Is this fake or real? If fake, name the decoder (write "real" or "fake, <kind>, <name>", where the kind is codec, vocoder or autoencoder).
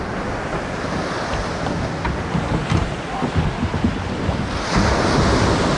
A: real